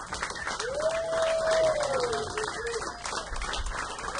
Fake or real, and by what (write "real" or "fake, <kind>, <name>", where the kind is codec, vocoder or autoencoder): real